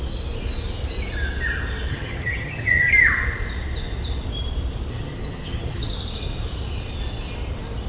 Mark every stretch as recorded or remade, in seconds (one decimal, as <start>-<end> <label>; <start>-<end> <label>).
0.0-1.9 recorded; 1.9-2.9 remade; 2.9-4.9 recorded; 4.9-5.9 remade; 5.9-7.9 recorded